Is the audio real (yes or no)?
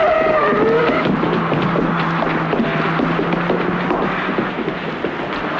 yes